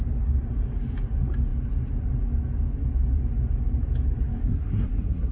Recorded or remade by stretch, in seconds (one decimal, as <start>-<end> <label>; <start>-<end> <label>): 0.0-4.4 recorded; 4.4-5.3 remade